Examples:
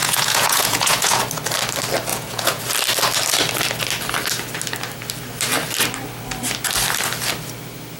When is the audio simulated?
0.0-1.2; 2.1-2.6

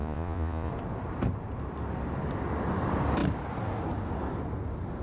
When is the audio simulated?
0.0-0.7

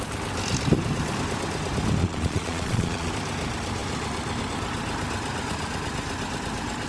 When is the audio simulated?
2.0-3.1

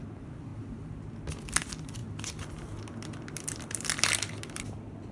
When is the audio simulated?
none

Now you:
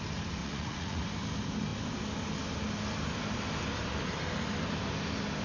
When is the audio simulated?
0.4-1.0

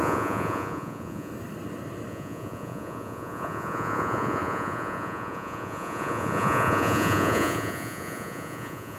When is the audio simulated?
0.0-1.3; 2.1-9.0

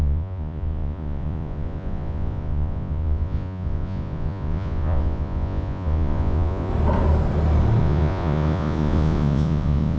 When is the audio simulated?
0.0-6.7; 7.8-10.0

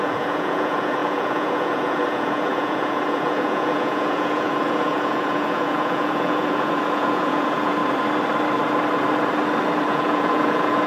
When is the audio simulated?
0.0-7.8; 9.9-10.9